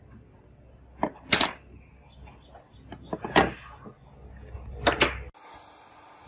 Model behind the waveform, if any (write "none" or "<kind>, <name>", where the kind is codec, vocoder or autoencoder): none